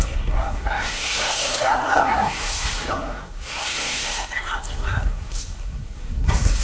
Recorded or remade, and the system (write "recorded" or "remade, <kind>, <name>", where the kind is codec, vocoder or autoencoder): remade, codec, SNAC